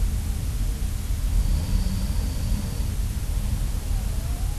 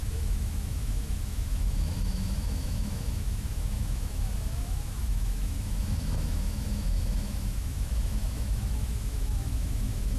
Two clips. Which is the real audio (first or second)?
first